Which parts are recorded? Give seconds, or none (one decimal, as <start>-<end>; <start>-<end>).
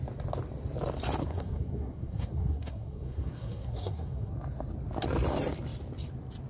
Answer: 0.0-1.2; 4.3-6.5